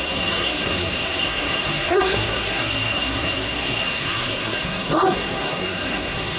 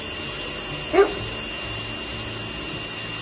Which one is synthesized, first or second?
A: first